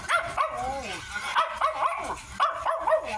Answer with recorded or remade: recorded